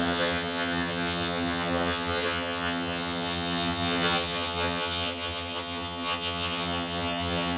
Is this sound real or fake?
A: fake